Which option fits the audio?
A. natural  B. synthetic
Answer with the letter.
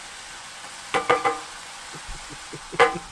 B